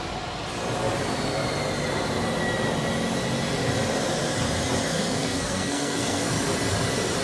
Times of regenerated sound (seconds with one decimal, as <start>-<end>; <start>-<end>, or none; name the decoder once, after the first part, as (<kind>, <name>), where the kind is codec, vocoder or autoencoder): 4.9-6.3 (codec, SNAC)